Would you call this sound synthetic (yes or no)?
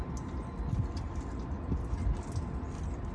no